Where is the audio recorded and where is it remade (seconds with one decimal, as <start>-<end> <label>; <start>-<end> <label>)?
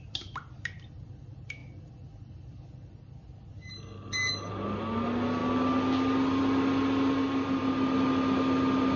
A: 0.0-9.0 recorded